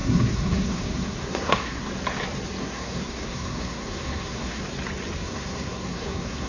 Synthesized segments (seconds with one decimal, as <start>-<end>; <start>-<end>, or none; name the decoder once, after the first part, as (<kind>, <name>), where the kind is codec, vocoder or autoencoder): 0.0-1.9 (codec, SNAC); 2.6-4.6; 5.2-6.5